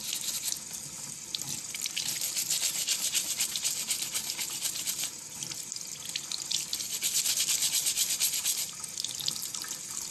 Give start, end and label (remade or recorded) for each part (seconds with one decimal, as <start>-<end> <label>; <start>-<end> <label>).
0.0-10.1 recorded